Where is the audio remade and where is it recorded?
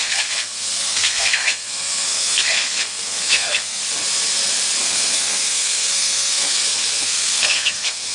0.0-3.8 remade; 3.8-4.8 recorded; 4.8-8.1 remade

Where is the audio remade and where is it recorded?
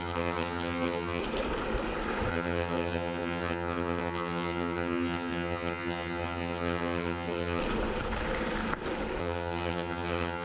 0.0-1.2 remade; 1.2-2.3 recorded; 2.3-7.6 remade; 7.6-9.2 recorded; 9.2-10.4 remade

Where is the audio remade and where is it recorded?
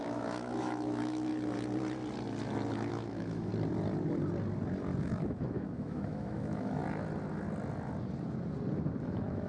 0.0-1.3 remade; 1.3-2.9 recorded; 2.9-3.5 remade; 3.5-5.0 recorded; 5.0-6.8 remade; 6.8-9.0 recorded; 9.0-9.5 remade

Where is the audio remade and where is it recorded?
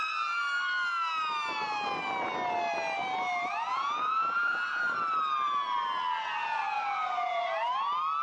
0.0-3.7 recorded; 3.7-4.8 remade; 4.8-8.2 recorded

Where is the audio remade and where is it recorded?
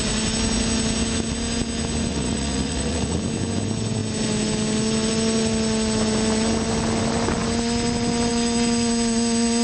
0.0-2.1 recorded; 2.1-3.2 remade; 3.2-9.6 recorded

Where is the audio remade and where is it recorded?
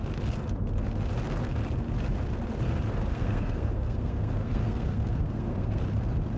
0.0-3.1 recorded; 3.1-5.8 remade; 5.8-6.4 recorded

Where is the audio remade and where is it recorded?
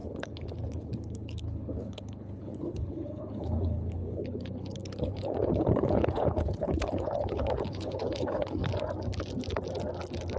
0.0-8.6 remade; 8.6-10.4 recorded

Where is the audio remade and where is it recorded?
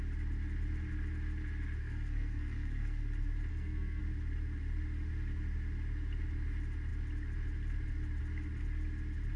0.0-1.8 recorded; 1.8-3.0 remade; 3.0-3.5 recorded; 3.5-4.0 remade; 4.0-9.4 recorded